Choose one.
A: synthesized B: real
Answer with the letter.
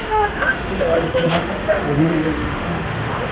A